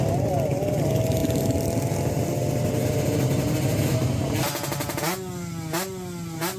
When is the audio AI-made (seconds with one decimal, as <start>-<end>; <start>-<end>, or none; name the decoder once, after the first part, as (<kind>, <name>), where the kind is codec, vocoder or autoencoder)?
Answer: none